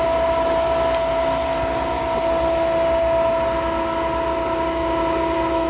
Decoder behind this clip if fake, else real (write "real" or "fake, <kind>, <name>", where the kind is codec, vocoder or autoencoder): real